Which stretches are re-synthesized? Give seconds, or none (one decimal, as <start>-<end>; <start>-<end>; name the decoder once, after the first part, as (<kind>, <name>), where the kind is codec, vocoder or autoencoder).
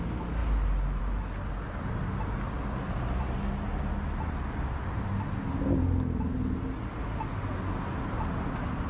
none